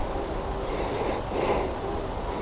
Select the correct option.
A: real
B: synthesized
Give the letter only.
A